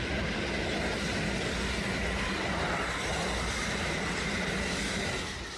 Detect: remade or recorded recorded